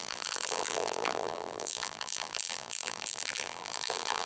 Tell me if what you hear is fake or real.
fake